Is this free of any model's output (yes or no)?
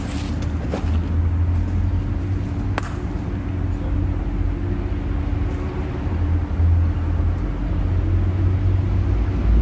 yes